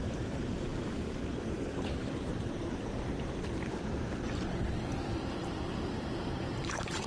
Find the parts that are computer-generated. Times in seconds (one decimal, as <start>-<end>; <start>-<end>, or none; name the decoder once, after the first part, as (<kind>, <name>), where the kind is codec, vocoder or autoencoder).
0.0-2.3 (vocoder, BigVGAN v2); 6.6-7.1